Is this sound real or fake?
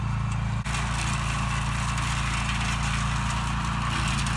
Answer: real